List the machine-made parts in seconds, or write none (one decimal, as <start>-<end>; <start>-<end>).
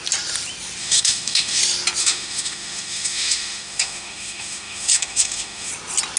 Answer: 0.8-1.6; 2.0-5.7